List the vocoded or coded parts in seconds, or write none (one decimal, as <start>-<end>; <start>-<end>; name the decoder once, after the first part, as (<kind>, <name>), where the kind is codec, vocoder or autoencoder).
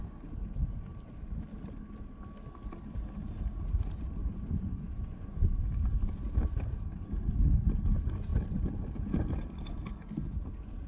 4.2-5.6 (vocoder, Vocos)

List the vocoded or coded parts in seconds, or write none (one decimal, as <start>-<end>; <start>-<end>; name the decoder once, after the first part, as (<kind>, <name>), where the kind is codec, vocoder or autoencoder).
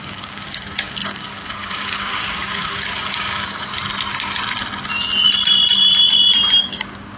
0.0-3.7 (codec, DAC); 6.6-7.2